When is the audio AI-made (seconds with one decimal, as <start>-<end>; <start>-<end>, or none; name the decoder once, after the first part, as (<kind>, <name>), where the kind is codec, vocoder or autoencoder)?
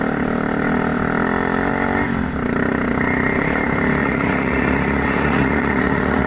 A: 4.0-6.3 (vocoder, Vocos)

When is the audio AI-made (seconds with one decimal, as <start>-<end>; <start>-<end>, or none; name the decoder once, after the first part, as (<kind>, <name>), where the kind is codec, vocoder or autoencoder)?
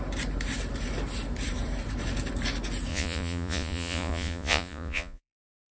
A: 2.9-5.7 (vocoder, Vocos)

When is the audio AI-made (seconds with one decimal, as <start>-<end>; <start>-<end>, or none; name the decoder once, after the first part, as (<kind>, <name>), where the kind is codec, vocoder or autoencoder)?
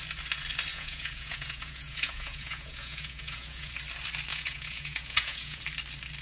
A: 0.7-3.7 (vocoder, Vocos); 4.3-5.6